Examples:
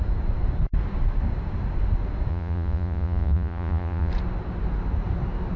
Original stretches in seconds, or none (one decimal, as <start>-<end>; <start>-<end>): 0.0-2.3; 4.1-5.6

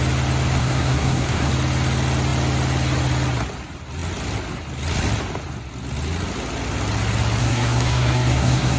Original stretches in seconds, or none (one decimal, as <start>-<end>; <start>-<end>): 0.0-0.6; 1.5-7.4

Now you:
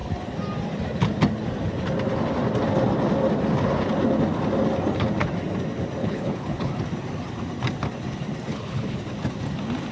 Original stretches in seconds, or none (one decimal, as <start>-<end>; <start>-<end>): 0.0-6.0; 6.7-8.5; 9.0-9.9

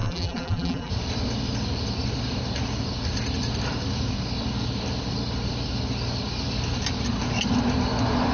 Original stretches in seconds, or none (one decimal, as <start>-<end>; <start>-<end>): 0.9-8.3